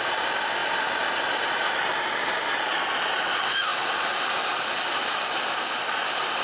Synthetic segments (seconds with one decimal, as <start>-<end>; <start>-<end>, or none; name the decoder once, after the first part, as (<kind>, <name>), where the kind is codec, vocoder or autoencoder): none